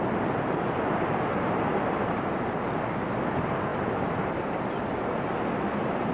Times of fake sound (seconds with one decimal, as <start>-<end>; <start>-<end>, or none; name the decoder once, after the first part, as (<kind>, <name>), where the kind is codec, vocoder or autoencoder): none